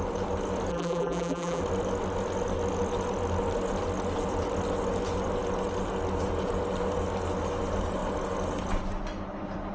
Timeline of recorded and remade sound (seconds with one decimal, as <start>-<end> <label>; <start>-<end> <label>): 0.0-0.7 recorded; 0.7-1.6 remade; 1.6-9.7 recorded